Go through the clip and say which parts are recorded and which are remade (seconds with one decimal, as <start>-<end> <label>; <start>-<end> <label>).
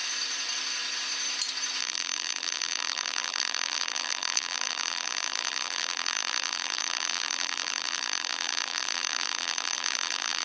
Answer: 0.0-1.8 recorded; 1.8-10.4 remade